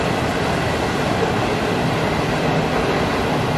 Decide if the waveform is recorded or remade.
recorded